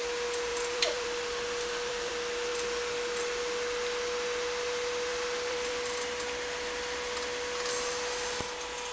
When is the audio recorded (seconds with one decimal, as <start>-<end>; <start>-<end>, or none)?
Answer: 0.0-0.5; 2.1-5.1; 5.7-8.9